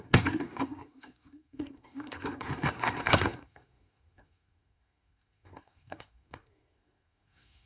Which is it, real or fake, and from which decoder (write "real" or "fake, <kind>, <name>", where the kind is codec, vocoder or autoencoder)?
fake, codec, SNAC